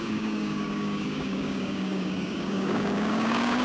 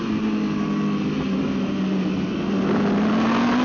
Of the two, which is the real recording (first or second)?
second